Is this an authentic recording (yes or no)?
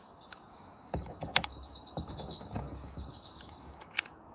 no